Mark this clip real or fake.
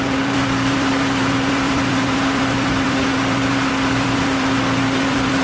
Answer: fake